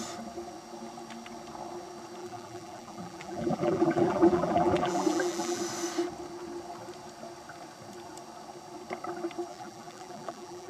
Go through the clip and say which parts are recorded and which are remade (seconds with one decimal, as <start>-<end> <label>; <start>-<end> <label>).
0.0-2.2 recorded; 2.2-5.6 remade; 5.6-9.5 recorded; 9.5-10.7 remade